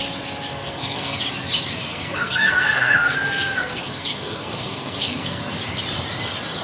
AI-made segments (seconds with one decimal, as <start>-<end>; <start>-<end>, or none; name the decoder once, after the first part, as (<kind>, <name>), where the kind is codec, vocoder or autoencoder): 0.5-1.2 (codec, SNAC); 1.9-5.4